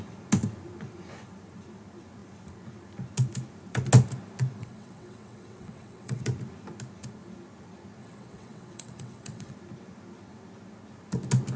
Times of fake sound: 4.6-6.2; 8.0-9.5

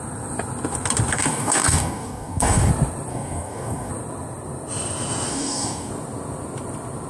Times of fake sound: 1.1-2.7; 3.1-3.9; 5.3-5.9

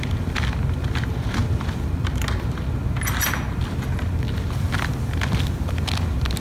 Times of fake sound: none

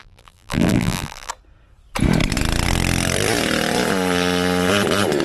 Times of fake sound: 0.0-1.3

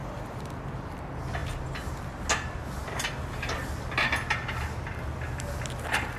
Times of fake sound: 0.0-0.9

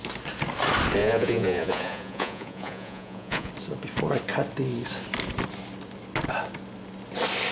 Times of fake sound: 1.0-3.5